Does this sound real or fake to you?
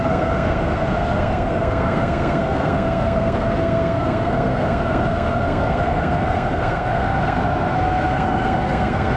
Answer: fake